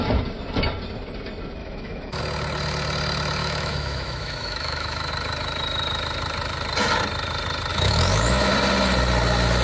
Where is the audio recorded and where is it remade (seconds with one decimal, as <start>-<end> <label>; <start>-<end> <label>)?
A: 0.0-1.6 recorded; 1.6-2.2 remade; 2.2-3.4 recorded; 3.4-5.1 remade; 5.1-7.7 recorded; 7.7-8.5 remade; 8.5-9.6 recorded